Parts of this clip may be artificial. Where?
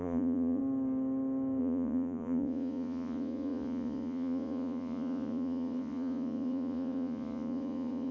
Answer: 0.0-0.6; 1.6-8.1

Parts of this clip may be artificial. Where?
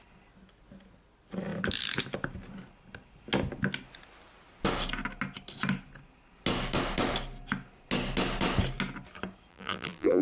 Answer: 9.5-10.2